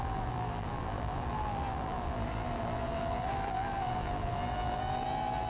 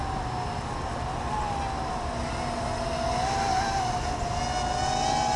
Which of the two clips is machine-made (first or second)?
first